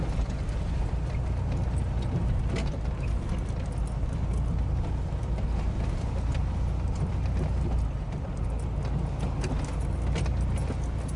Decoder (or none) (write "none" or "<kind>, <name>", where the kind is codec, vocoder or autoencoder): none